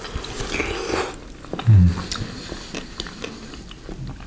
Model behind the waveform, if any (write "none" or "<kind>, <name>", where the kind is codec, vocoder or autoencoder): none